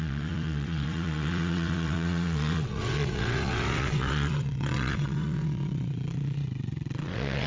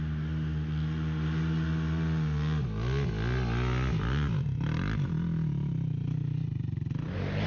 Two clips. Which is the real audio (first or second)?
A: second